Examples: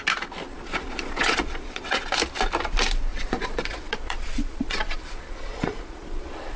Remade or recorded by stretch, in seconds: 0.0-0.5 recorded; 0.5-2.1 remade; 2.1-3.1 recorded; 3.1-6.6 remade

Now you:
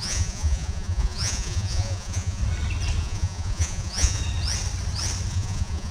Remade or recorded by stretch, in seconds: 0.0-2.4 remade; 2.4-3.0 recorded; 3.0-4.2 remade; 4.2-5.3 recorded; 5.3-5.9 remade

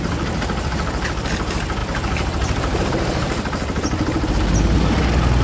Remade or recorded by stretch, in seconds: 0.0-5.4 recorded